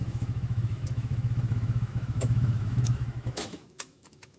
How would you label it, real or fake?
fake